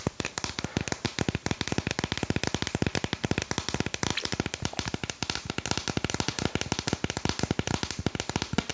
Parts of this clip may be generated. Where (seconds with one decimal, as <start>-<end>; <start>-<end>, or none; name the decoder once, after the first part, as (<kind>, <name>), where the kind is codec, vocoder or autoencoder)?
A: none